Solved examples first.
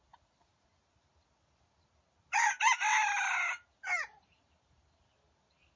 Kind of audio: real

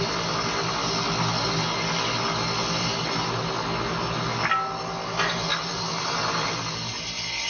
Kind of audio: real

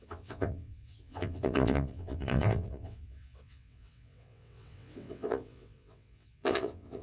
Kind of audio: fake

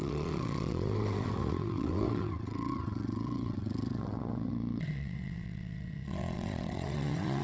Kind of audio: fake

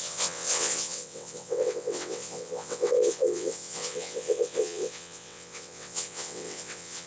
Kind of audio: fake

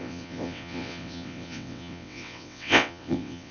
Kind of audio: fake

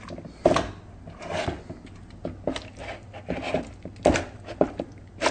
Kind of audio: real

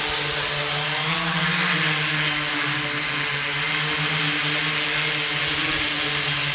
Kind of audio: real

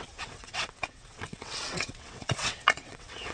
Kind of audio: fake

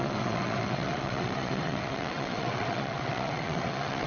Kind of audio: fake